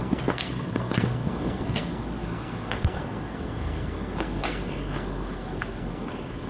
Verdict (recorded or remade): remade